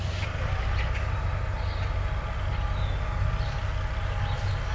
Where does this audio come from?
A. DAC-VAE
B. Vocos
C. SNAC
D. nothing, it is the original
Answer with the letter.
D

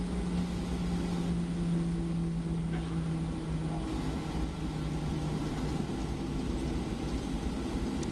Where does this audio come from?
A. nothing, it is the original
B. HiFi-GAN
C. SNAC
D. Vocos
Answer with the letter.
A